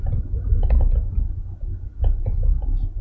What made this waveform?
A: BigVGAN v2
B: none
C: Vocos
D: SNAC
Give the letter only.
B